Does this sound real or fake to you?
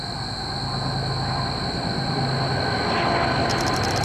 real